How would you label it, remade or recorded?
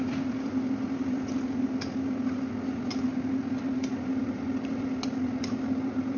recorded